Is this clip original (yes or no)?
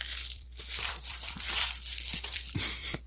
no